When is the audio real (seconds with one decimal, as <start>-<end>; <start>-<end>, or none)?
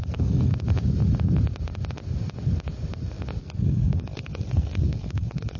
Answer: 0.5-3.4